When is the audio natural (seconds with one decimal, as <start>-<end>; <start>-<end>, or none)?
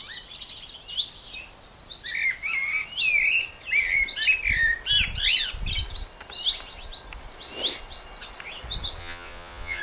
0.0-9.0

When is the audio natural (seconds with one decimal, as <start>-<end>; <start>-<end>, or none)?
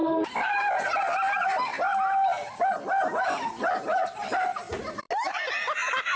0.0-6.2